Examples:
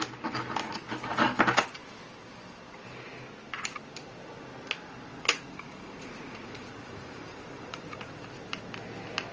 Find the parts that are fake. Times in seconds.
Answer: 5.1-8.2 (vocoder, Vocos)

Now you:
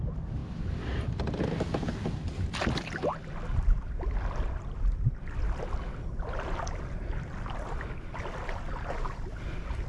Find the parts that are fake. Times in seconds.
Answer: none

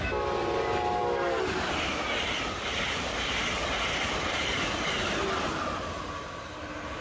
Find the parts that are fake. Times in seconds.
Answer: none

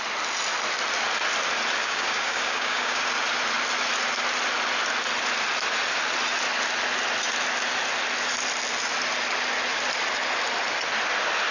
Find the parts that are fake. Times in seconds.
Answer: 1.8-3.0 (codec, DAC)

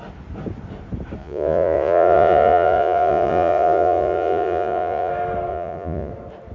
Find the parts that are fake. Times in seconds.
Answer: 1.2-5.1 (vocoder, Vocos); 5.5-6.1

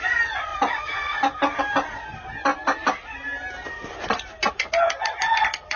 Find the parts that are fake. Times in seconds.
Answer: none

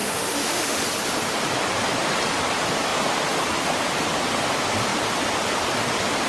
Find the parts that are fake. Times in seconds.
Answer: 0.0-0.8 (autoencoder, DAC-VAE)

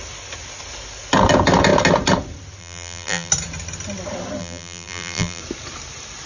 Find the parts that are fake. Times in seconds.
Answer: 2.6-3.3 (vocoder, BigVGAN v2); 4.4-5.4